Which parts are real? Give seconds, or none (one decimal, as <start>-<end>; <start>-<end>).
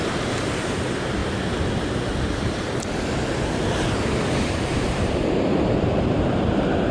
1.2-4.3